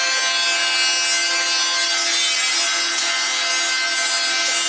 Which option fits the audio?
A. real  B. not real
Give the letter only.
A